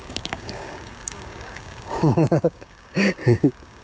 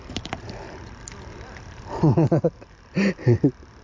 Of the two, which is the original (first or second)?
second